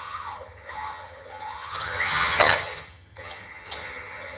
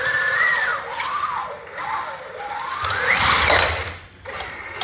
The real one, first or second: second